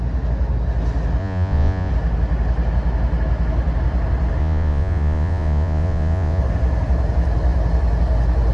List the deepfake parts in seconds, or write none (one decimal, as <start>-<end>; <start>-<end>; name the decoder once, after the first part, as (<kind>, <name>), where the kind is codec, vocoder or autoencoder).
1.2-1.9 (vocoder, Vocos); 4.4-6.4